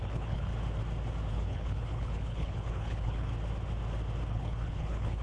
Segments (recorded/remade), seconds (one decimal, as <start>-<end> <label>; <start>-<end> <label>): 0.0-0.5 remade; 0.5-1.3 recorded; 1.3-3.3 remade; 3.3-4.3 recorded; 4.3-5.2 remade